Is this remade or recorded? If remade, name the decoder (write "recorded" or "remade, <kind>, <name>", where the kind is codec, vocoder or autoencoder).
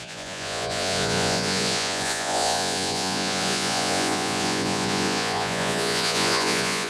remade, vocoder, Vocos